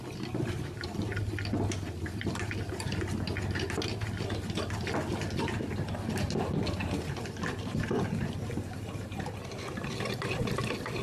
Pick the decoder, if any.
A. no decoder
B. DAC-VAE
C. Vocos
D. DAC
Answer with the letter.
A